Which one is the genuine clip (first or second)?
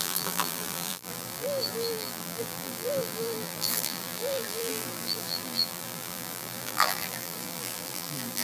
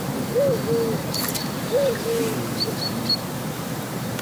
second